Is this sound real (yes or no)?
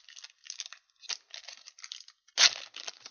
yes